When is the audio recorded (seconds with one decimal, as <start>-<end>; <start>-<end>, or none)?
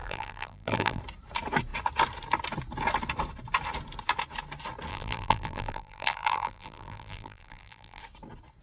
1.0-4.9; 8.0-8.6